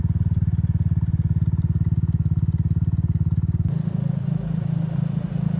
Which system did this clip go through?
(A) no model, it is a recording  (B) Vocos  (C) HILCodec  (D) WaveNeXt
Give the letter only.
A